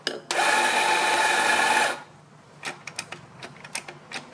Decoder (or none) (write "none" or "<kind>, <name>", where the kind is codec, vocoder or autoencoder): none